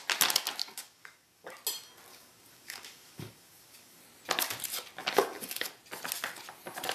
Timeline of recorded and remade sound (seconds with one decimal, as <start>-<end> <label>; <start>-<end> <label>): 0.0-0.6 recorded; 0.6-1.5 remade; 1.5-2.1 recorded; 2.1-4.0 remade; 4.0-5.0 recorded; 5.0-5.7 remade; 5.7-6.9 recorded